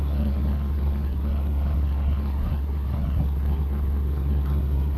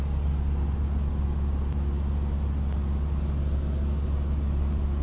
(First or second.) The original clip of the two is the second